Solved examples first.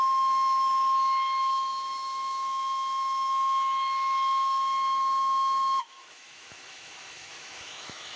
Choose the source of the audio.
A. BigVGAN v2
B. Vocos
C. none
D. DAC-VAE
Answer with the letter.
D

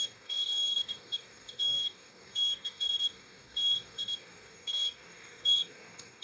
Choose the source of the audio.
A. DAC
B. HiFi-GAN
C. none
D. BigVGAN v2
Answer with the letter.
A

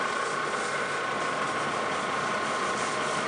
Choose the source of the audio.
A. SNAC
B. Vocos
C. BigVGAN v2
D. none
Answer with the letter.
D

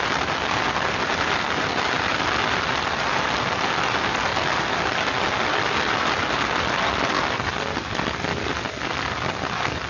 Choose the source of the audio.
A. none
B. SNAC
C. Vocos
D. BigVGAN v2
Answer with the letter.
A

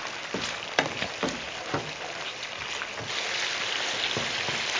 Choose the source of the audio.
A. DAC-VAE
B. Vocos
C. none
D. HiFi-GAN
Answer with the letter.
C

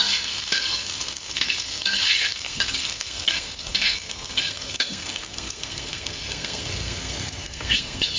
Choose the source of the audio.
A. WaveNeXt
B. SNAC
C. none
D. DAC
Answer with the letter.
B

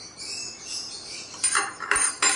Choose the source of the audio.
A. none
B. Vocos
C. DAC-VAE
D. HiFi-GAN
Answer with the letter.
A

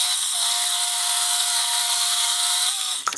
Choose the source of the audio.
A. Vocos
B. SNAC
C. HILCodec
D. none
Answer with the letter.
B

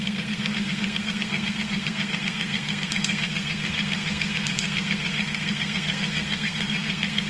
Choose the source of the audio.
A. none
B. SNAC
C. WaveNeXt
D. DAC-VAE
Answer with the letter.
B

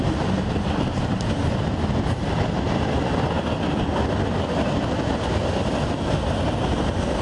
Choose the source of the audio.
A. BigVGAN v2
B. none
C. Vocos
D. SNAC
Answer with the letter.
B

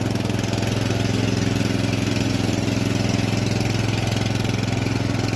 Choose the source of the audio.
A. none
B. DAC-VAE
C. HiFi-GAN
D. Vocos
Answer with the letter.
A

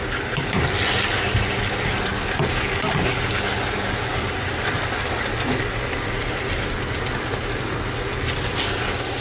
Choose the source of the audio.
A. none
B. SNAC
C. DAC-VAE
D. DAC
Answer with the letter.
A